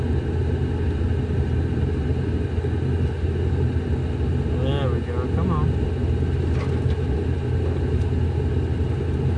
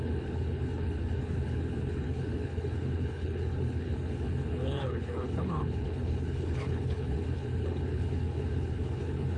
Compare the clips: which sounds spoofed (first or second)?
second